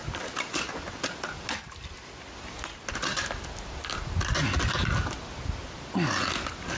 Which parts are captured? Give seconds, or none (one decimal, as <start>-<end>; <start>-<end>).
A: 0.0-6.8